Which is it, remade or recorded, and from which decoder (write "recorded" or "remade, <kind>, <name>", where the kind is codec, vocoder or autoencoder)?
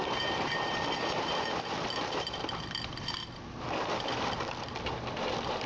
remade, vocoder, BigVGAN v2